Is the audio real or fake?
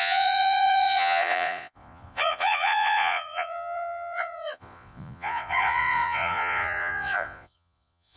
fake